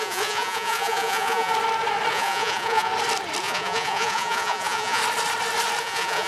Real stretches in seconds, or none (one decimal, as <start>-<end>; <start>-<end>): 1.5-2.1; 2.9-3.4; 5.0-5.8